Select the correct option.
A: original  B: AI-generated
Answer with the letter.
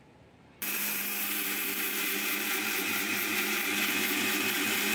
B